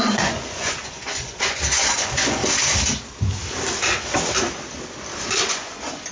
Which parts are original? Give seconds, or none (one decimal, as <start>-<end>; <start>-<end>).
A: 2.4-5.5